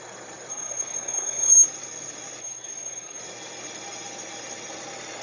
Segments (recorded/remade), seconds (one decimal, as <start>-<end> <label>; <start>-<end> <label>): 0.0-0.5 recorded; 0.5-1.5 remade; 1.5-2.4 recorded; 2.4-3.2 remade; 3.2-5.2 recorded